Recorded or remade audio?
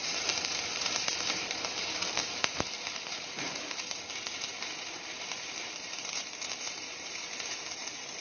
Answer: remade